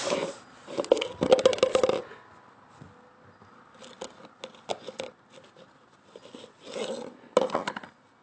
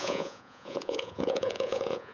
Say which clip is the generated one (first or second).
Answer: second